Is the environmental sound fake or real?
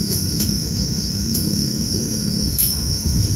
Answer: fake